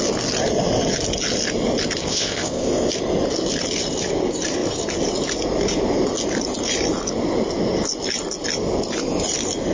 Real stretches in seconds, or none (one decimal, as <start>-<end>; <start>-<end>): 0.0-2.0; 2.9-9.7